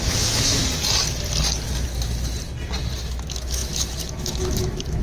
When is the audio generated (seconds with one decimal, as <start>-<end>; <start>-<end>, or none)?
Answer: 0.0-0.6; 3.0-5.0